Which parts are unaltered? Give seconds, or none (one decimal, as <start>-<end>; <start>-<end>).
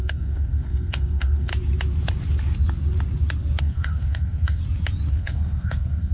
1.5-3.6; 4.6-5.1